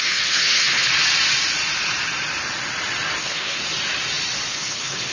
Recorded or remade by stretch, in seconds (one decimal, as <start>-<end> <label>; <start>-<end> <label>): 0.0-0.9 remade; 0.9-3.2 recorded; 3.2-3.6 remade; 3.6-4.5 recorded; 4.5-5.1 remade